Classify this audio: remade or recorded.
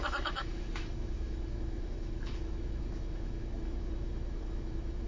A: remade